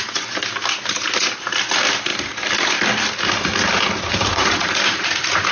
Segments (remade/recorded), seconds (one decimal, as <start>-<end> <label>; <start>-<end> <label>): 0.0-4.3 recorded; 4.3-5.5 remade